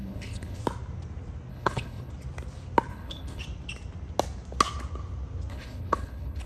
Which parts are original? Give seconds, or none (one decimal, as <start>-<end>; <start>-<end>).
0.6-1.5; 2.1-2.9; 3.4-5.5